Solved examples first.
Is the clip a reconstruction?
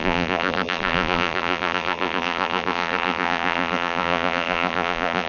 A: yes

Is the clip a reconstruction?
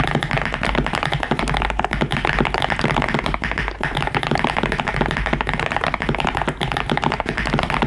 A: no